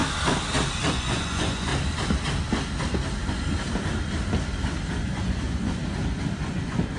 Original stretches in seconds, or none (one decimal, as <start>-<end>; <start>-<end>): 0.0-0.9; 1.7-4.9; 5.8-6.5

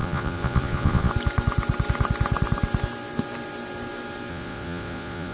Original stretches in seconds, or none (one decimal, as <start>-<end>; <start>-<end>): 1.1-4.3

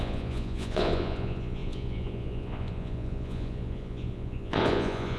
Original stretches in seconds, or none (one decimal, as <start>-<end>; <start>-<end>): none

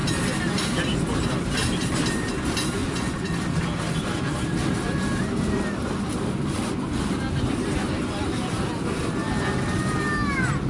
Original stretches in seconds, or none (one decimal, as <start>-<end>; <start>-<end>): 0.0-2.8; 3.4-10.7

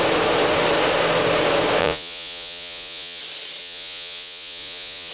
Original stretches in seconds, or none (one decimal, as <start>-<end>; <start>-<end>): 0.0-1.8; 3.2-3.6

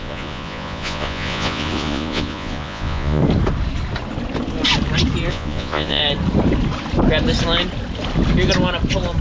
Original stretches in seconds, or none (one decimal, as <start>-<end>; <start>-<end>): 3.2-5.3; 6.0-9.2

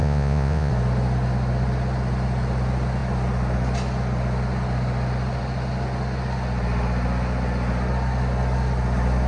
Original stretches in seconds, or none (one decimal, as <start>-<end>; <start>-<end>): 0.7-9.3

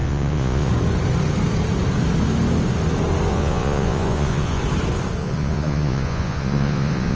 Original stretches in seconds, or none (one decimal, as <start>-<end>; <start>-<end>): 0.7-3.3; 4.6-5.2